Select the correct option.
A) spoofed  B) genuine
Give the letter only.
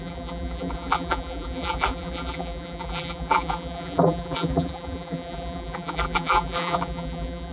A